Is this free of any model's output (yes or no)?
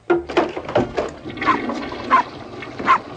yes